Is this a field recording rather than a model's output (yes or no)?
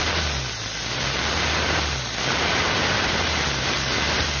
yes